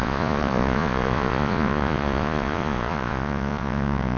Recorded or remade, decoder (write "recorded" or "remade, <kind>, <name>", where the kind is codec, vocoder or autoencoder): remade, vocoder, Vocos